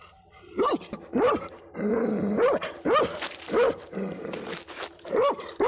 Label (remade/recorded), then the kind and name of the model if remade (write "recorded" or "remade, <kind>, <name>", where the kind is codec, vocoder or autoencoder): remade, vocoder, BigVGAN v2